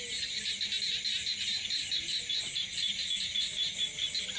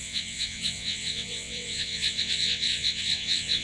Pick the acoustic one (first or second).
first